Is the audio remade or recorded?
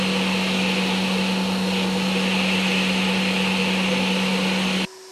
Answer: recorded